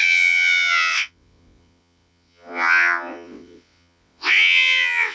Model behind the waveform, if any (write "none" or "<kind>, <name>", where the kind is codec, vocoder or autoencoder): vocoder, WaveNeXt